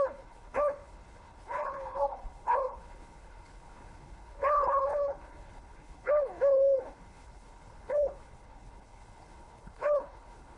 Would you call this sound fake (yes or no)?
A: yes